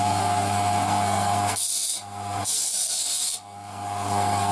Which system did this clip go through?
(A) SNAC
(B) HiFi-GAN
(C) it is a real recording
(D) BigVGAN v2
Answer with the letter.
A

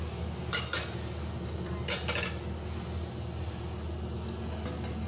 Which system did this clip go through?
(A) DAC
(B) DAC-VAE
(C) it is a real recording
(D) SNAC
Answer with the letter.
C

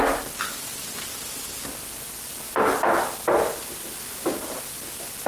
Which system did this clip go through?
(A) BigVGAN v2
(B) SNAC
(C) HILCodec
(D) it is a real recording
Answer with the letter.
D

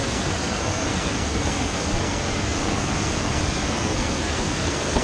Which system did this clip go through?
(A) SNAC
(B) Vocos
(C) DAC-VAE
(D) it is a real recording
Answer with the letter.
A